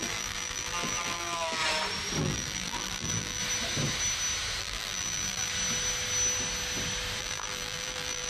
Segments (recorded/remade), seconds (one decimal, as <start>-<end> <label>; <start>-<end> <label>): 0.0-1.6 remade; 1.6-2.2 recorded; 2.2-3.4 remade; 3.4-4.6 recorded; 4.6-5.5 remade; 5.5-7.2 recorded; 7.2-8.3 remade